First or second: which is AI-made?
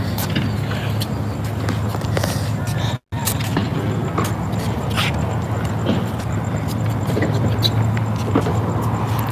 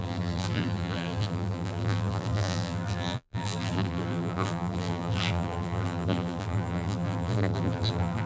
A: second